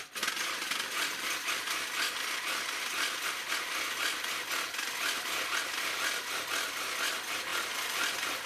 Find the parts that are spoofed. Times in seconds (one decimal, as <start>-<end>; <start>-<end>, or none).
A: none